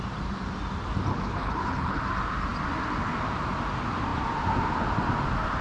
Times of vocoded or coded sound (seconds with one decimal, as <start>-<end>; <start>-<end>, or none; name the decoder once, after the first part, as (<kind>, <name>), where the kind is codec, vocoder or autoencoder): 1.1-2.0 (codec, HILCodec)